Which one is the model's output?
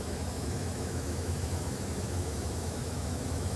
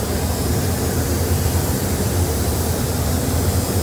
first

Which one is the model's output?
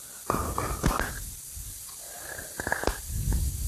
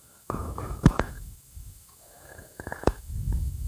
second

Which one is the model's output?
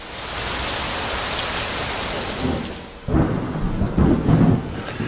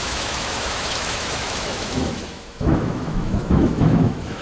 second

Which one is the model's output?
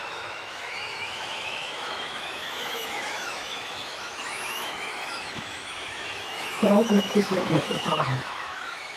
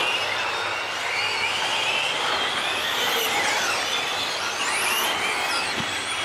first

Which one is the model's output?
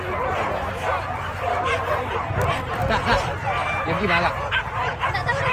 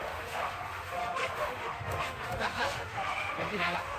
second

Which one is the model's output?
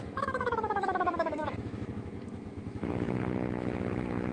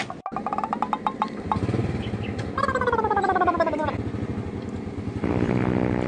first